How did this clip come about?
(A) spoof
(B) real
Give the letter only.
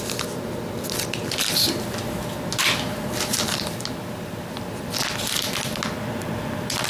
B